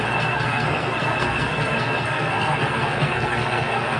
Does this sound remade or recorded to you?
remade